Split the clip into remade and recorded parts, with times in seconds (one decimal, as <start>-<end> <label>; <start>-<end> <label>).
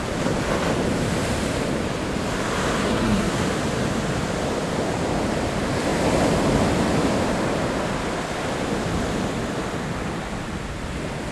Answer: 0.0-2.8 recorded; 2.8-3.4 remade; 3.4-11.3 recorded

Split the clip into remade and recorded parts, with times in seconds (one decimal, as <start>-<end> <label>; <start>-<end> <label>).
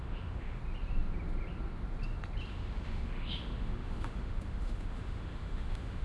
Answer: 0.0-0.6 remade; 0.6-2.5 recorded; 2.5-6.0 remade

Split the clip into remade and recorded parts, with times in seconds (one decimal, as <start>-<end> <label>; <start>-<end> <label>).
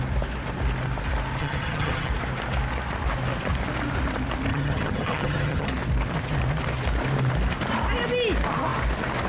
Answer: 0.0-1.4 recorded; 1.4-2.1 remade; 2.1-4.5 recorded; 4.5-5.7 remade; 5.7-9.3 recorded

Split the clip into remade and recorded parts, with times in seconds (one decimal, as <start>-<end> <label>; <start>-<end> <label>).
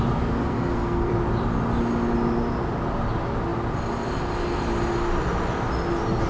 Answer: 0.0-0.4 recorded; 0.4-1.1 remade; 1.1-6.3 recorded